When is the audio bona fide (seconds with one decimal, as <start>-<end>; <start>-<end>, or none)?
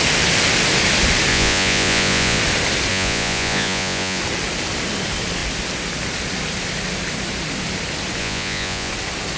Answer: 0.0-1.3; 2.4-2.9; 4.2-8.2; 8.9-9.4